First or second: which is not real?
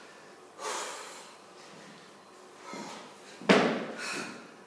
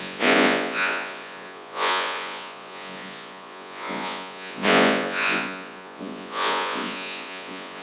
second